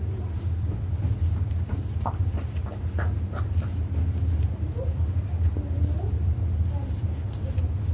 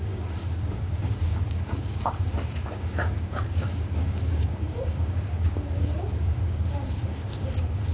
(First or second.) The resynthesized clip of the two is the second